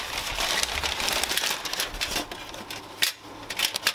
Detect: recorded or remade recorded